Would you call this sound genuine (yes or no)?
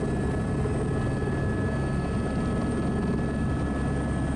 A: yes